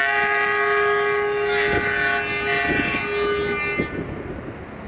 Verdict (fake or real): real